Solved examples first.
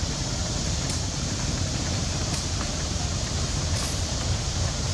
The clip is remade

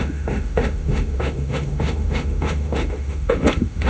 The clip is remade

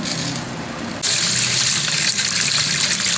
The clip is recorded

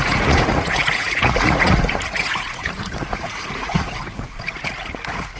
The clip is remade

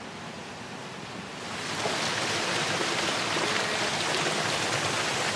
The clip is recorded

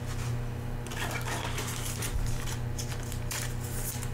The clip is recorded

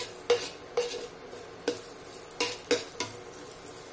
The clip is recorded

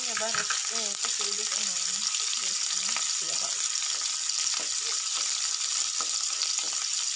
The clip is recorded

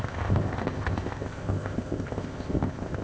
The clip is remade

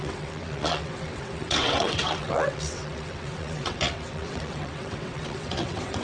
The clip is remade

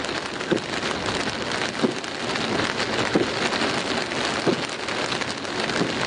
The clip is recorded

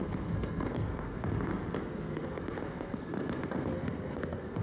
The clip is remade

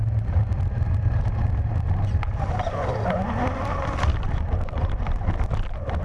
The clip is recorded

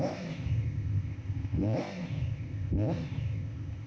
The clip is remade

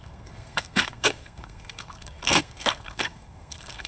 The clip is remade